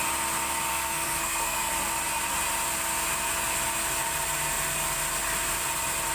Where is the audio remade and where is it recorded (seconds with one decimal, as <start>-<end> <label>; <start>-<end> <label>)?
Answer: 0.0-0.7 recorded; 0.7-1.7 remade; 1.7-6.1 recorded